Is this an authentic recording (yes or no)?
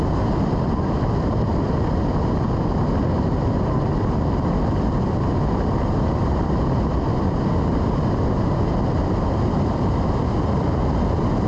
yes